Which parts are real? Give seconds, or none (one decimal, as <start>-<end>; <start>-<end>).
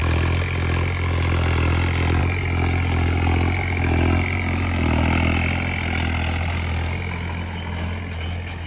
0.0-8.7